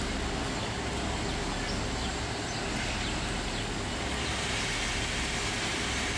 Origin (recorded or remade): recorded